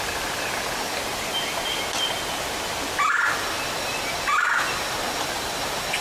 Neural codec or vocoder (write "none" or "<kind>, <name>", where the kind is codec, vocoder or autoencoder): none